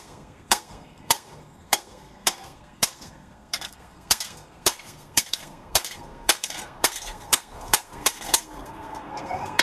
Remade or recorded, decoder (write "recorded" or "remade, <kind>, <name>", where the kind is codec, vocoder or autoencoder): remade, codec, SNAC